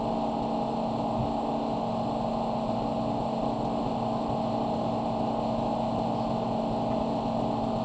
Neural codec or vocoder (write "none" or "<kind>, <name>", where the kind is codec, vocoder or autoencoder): none